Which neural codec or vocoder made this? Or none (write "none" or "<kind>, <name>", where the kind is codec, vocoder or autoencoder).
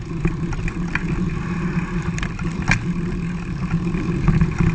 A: none